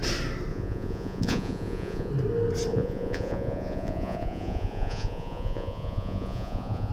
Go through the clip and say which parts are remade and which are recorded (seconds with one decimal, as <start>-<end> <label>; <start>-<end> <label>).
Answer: 0.0-0.5 recorded; 0.5-2.1 remade; 2.1-2.7 recorded; 2.7-6.9 remade